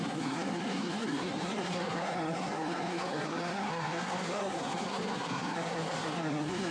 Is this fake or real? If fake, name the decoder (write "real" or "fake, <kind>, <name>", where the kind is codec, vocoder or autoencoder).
fake, codec, SNAC